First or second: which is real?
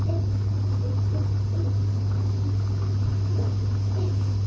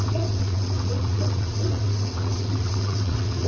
first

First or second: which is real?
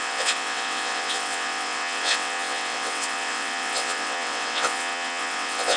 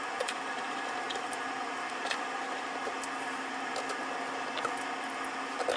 second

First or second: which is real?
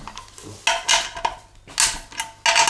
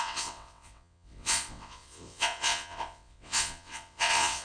first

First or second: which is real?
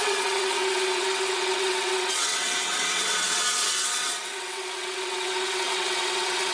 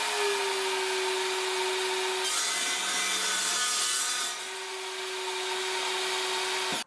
second